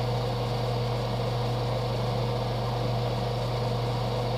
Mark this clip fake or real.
real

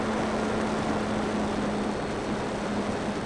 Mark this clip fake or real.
real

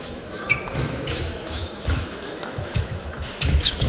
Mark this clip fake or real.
fake